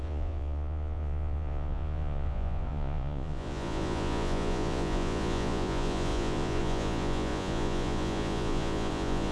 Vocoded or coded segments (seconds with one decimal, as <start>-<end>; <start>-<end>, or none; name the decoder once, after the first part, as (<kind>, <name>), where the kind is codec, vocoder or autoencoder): 0.0-9.3 (vocoder, Vocos)

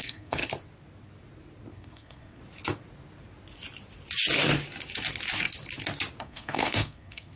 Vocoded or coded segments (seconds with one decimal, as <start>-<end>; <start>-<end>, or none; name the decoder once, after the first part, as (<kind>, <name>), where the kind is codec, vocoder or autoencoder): 0.0-0.4 (codec, SNAC); 1.7-2.4; 6.2-7.4